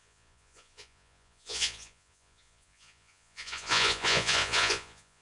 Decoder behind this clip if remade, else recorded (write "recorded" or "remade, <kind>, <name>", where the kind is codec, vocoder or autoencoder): remade, vocoder, Vocos